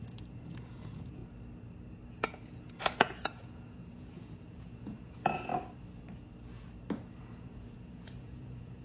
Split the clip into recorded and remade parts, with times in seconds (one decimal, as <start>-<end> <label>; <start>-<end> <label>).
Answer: 0.0-1.2 remade; 1.2-2.1 recorded; 2.1-5.5 remade; 5.5-7.2 recorded; 7.2-8.8 remade

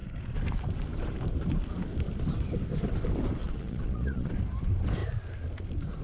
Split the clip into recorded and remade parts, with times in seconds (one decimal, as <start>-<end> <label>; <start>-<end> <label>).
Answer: 0.0-3.4 recorded; 3.4-4.3 remade; 4.3-6.0 recorded